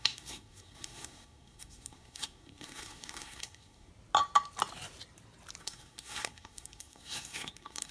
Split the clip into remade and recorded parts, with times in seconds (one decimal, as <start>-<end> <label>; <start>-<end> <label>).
0.0-3.9 remade; 3.9-5.6 recorded; 5.6-7.9 remade